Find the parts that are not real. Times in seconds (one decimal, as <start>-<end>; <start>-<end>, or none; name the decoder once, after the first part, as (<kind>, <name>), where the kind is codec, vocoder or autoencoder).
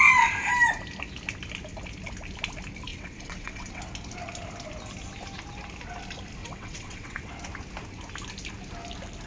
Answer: 2.9-3.8 (vocoder, WaveNeXt); 6.4-7.3